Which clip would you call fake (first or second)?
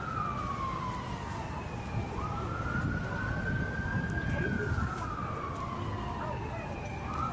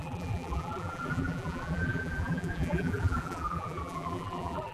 second